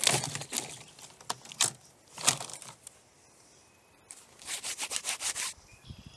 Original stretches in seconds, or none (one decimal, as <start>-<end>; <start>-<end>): 0.0-2.5; 4.9-6.2